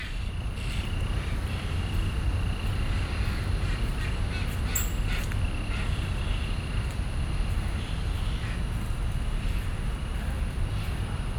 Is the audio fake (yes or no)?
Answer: no